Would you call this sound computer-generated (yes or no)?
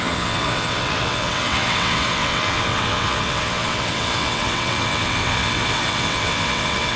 yes